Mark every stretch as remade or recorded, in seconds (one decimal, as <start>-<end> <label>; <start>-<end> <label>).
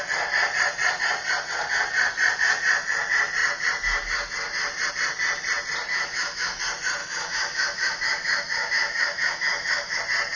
0.0-5.9 recorded; 5.9-6.6 remade; 6.6-7.0 recorded; 7.0-10.0 remade; 10.0-10.4 recorded